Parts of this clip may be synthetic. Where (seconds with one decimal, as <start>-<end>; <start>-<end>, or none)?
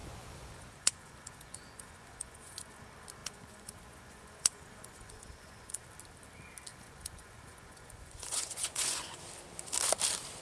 0.0-2.8; 3.2-5.8; 6.7-9.2